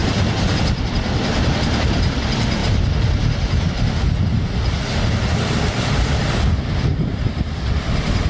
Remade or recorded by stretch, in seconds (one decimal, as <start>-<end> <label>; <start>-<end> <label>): 0.0-2.6 recorded; 2.6-3.7 remade; 3.7-5.3 recorded; 5.3-6.1 remade; 6.1-8.3 recorded

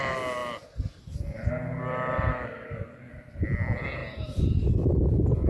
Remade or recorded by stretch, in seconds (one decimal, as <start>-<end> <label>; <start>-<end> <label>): 0.0-2.3 recorded; 2.3-3.1 remade; 3.1-5.5 recorded

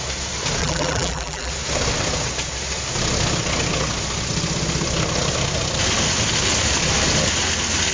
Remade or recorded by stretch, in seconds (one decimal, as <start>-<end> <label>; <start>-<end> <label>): 0.0-0.6 recorded; 0.6-1.5 remade; 1.5-7.9 recorded

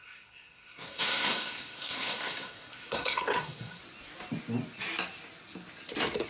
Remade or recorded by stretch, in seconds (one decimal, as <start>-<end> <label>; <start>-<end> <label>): 0.0-3.8 remade; 3.8-6.3 recorded

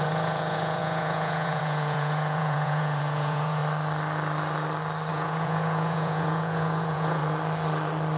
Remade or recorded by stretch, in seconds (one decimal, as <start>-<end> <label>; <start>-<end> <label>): 0.0-3.6 remade; 3.6-5.1 recorded; 5.1-7.2 remade; 7.2-8.2 recorded